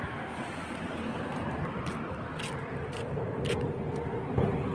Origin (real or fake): real